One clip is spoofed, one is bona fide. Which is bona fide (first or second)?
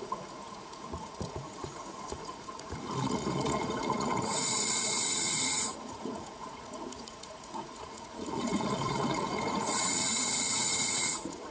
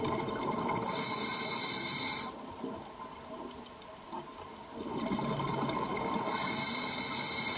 second